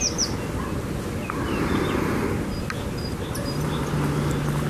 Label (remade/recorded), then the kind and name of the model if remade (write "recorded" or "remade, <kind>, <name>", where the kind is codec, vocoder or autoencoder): recorded